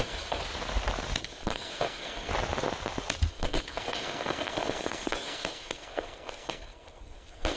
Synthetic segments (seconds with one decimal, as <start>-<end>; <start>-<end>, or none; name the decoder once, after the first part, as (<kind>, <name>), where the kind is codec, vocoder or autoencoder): 0.0-0.4 (codec, SNAC); 1.2-2.3; 3.3-7.6